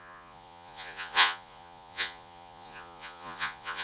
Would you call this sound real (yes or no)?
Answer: no